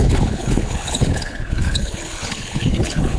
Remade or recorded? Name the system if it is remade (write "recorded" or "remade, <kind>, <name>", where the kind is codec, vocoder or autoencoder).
remade, codec, HILCodec